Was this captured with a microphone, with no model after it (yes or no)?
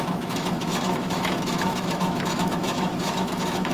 no